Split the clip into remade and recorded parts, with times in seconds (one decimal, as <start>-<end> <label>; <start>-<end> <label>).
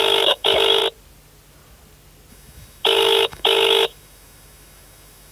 0.0-0.8 remade; 0.8-2.3 recorded; 2.3-5.3 remade